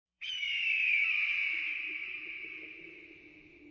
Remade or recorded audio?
remade